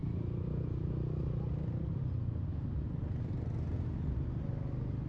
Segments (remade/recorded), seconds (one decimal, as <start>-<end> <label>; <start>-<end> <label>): 0.0-5.1 recorded